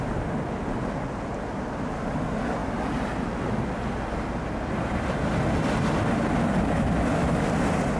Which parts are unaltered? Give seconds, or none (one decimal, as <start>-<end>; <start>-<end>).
0.0-8.0